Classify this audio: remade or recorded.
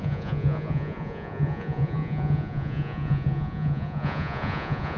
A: remade